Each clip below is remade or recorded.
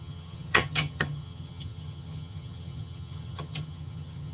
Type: remade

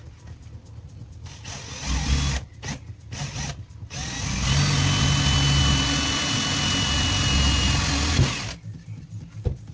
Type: recorded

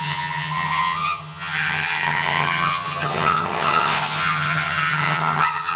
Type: remade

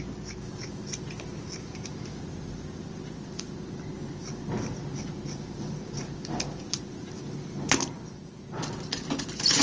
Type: recorded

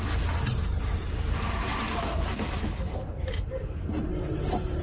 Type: recorded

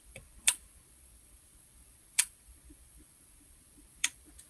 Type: remade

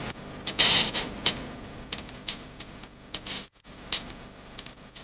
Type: recorded